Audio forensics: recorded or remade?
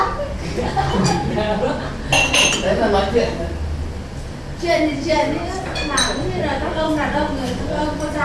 recorded